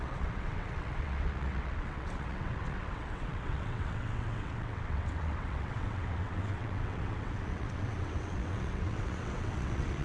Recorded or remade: remade